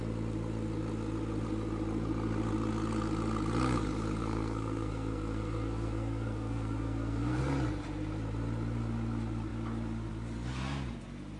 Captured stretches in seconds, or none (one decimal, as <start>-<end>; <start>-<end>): 0.0-4.2; 7.4-11.4